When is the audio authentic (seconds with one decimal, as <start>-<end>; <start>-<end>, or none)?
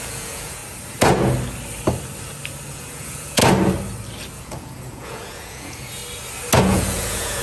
0.6-2.7; 3.4-4.3; 6.0-6.6